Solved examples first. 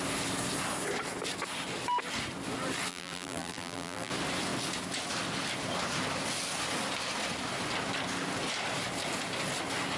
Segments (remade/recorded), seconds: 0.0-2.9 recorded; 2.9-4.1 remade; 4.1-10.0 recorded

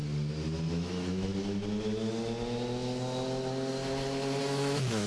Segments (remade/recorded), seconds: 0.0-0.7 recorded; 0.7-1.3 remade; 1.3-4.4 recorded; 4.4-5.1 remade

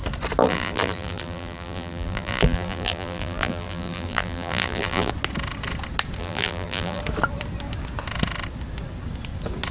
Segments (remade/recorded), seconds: 0.0-0.4 recorded; 0.4-5.1 remade; 5.1-6.2 recorded; 6.2-7.0 remade; 7.0-9.7 recorded

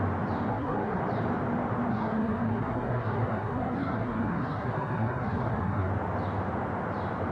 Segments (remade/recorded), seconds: 0.0-0.5 recorded; 0.5-1.0 remade; 1.0-1.9 recorded; 1.9-5.9 remade; 5.9-7.3 recorded

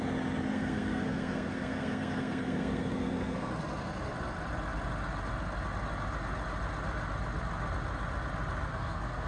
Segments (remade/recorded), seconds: 0.0-0.5 recorded; 0.5-3.6 remade; 3.6-8.7 recorded; 8.7-9.3 remade

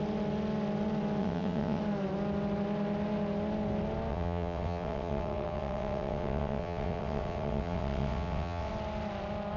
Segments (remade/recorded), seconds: 0.0-1.2 recorded; 1.2-1.8 remade; 1.8-4.1 recorded; 4.1-8.7 remade; 8.7-9.6 recorded

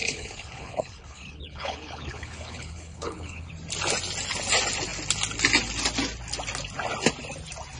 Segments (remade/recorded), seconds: 0.0-3.5 remade; 3.5-7.8 recorded

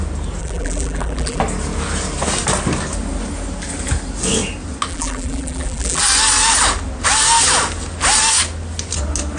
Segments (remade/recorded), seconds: 0.0-0.4 recorded; 0.4-1.4 remade; 1.4-4.9 recorded; 4.9-6.0 remade; 6.0-9.4 recorded